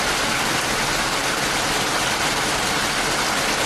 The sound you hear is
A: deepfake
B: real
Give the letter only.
B